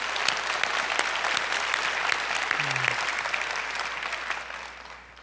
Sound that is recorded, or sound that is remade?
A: recorded